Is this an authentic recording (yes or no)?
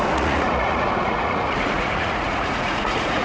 no